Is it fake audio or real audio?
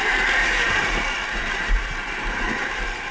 fake